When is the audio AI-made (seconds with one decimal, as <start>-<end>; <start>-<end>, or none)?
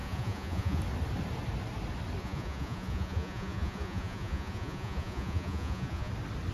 0.0-0.8; 2.2-6.1